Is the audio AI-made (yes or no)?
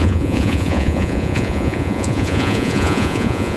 yes